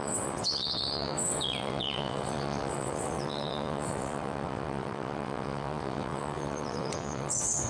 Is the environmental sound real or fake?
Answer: fake